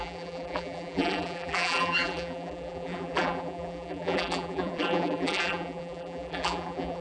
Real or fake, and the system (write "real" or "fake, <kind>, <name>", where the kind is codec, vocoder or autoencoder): fake, vocoder, BigVGAN v2